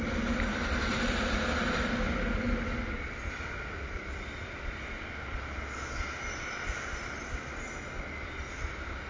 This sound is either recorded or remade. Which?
recorded